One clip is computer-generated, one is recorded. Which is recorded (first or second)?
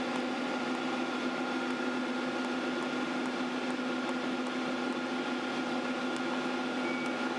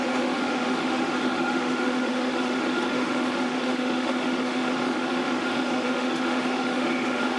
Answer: first